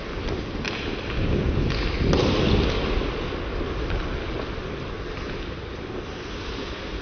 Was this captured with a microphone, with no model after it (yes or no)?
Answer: yes